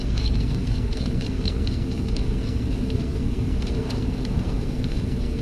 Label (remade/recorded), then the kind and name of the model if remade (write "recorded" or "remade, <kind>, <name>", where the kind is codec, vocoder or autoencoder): remade, codec, SNAC